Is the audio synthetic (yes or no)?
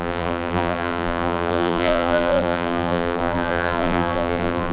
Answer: yes